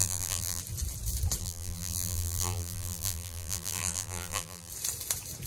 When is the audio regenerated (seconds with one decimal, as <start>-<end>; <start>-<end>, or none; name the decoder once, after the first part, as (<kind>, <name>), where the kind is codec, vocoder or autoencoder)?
0.0-0.6 (vocoder, BigVGAN v2); 1.4-4.7

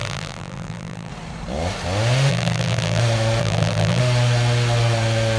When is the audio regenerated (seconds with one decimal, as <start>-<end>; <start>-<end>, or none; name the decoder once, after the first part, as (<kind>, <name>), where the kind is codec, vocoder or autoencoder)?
0.0-1.1 (vocoder, BigVGAN v2); 2.3-3.0; 3.4-4.0

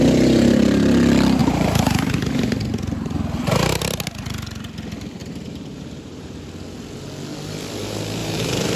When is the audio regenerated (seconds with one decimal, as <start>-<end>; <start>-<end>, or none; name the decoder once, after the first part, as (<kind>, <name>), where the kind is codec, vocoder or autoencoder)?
1.4-2.1 (vocoder, BigVGAN v2); 5.2-6.4; 8.2-8.8

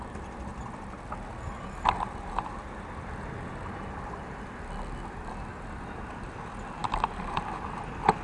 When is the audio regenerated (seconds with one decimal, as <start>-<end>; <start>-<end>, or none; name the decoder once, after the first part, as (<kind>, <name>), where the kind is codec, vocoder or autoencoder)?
none

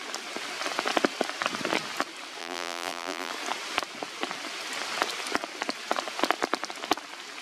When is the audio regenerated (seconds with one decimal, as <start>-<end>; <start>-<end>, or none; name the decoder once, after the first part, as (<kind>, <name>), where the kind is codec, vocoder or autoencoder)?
2.4-3.3 (vocoder, BigVGAN v2)

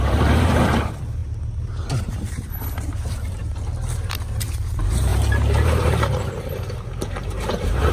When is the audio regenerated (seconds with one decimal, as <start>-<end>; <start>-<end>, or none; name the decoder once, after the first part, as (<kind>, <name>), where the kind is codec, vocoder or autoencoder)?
0.0-3.4 (vocoder, BigVGAN v2); 4.1-7.9